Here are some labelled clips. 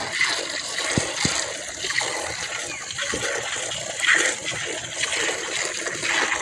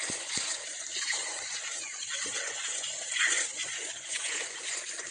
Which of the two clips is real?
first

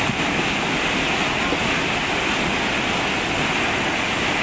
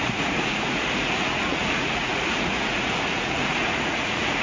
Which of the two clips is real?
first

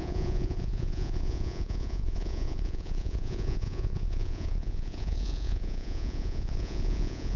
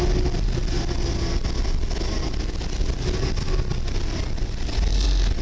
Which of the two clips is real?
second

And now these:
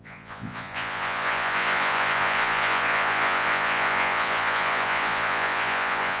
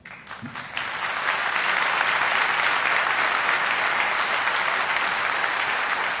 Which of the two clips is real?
second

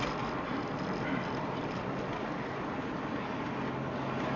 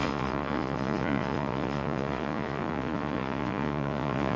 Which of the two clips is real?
first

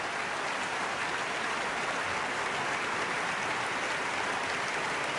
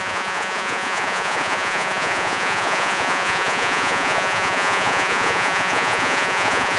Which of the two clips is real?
first